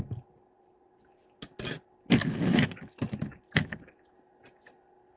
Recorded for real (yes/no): yes